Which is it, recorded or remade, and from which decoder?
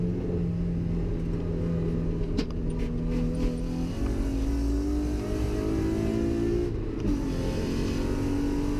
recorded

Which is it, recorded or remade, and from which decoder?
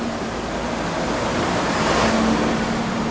recorded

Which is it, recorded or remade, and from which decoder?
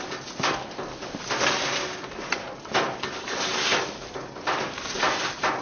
recorded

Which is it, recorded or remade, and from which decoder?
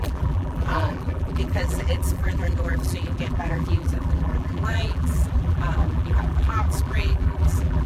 remade, vocoder, BigVGAN v2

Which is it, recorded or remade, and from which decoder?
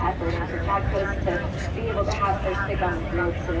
recorded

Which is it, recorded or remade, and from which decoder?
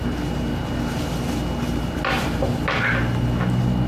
recorded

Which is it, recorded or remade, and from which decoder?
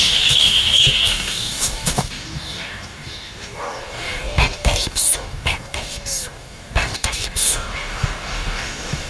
remade, codec, DAC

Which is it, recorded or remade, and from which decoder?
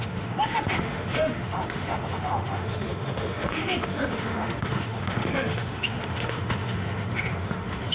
remade, autoencoder, DAC-VAE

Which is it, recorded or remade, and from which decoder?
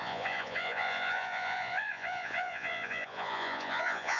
remade, vocoder, Vocos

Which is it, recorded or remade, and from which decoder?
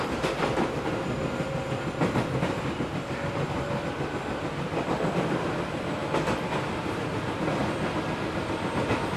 recorded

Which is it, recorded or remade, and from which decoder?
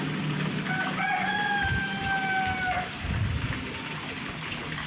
recorded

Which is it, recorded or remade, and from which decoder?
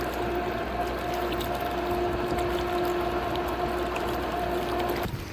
recorded